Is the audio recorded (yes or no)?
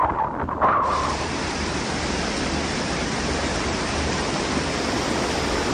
no